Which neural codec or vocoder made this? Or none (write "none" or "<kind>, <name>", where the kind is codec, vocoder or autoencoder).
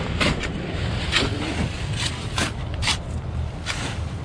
vocoder, BigVGAN v2